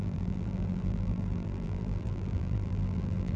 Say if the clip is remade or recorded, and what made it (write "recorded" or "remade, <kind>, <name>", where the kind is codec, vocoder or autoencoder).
remade, vocoder, BigVGAN v2